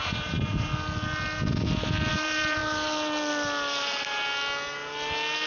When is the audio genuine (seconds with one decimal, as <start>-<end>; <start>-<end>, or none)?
0.7-2.1; 2.6-5.5